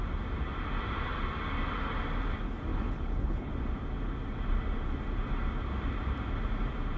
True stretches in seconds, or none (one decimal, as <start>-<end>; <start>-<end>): 0.0-2.7; 3.5-7.0